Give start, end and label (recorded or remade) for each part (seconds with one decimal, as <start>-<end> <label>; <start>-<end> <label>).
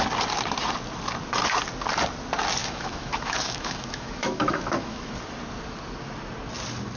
0.0-2.6 recorded; 2.6-5.1 remade; 5.1-7.0 recorded